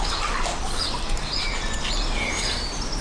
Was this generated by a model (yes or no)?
no